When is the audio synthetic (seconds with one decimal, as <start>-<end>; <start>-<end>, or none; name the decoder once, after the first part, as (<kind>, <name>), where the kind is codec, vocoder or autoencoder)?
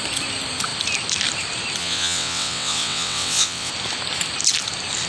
1.8-3.7 (vocoder, WaveNeXt)